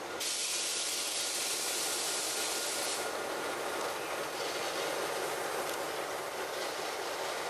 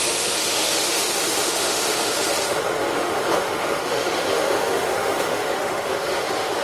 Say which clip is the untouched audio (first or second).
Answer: first